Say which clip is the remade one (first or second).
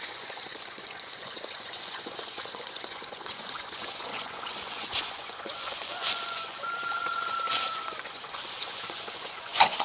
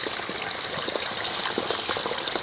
first